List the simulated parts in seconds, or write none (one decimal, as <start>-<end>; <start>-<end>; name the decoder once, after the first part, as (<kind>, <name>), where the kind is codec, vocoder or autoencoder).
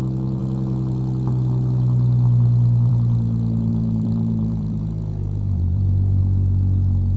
3.7-4.8 (vocoder, BigVGAN v2); 5.2-6.2